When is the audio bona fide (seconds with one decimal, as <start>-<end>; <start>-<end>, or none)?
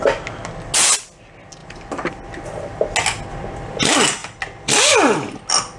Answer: 0.0-1.6; 2.3-3.3; 3.8-4.2; 5.3-5.8